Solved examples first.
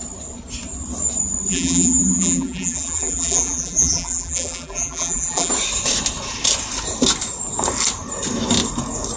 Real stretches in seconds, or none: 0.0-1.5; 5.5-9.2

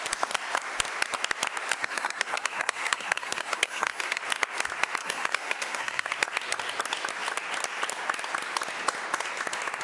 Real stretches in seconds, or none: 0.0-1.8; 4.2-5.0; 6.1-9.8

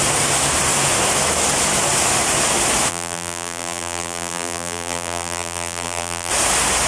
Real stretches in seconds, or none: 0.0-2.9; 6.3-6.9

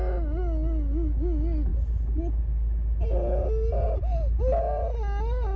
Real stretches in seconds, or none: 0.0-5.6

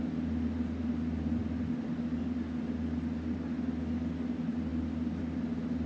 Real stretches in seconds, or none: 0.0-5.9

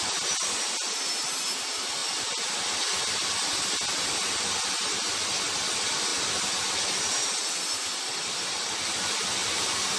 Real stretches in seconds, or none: 0.0-10.0